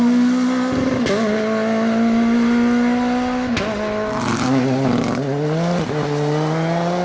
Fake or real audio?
real